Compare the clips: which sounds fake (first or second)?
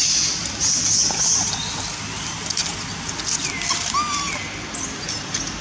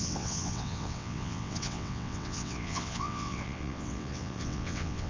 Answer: second